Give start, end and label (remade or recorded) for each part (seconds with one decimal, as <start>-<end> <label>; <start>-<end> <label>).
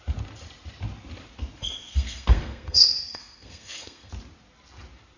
0.0-1.6 recorded; 1.6-4.1 remade; 4.1-5.2 recorded